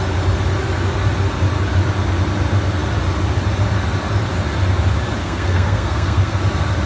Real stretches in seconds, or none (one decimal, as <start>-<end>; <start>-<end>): 0.0-5.2; 6.4-6.9